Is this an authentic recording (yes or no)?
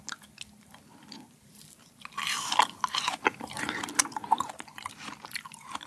yes